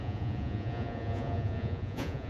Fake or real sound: fake